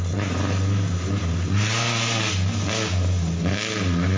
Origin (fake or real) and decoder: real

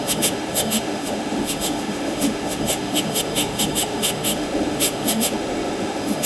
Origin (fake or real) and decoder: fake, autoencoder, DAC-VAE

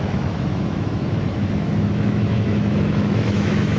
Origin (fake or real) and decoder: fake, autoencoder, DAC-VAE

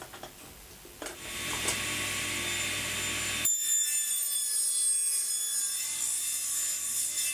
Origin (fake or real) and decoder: real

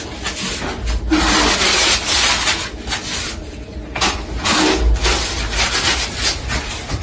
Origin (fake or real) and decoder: real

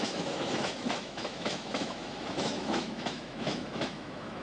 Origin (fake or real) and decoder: fake, autoencoder, DAC-VAE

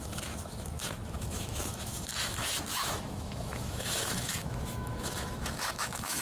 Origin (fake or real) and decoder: fake, autoencoder, DAC-VAE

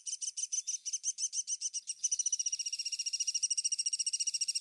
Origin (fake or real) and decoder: real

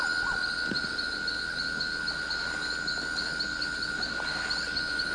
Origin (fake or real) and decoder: real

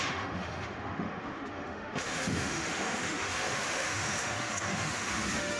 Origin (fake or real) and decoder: fake, autoencoder, DAC-VAE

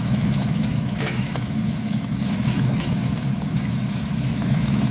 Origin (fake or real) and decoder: fake, autoencoder, DAC-VAE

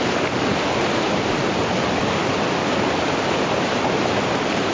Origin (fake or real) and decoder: real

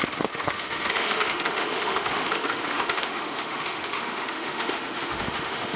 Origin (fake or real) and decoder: fake, autoencoder, DAC-VAE